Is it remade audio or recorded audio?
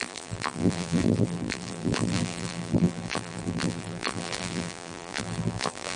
remade